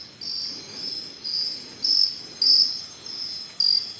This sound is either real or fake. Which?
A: real